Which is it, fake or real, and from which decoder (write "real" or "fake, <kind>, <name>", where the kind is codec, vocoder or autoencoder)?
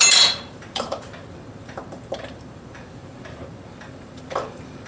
fake, vocoder, BigVGAN v2